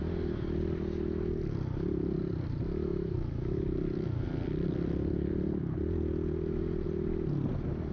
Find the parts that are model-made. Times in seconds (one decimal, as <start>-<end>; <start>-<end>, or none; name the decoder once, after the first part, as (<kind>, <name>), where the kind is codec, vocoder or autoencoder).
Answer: 2.9-5.8 (vocoder, BigVGAN v2)